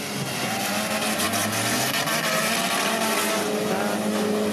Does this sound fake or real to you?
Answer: real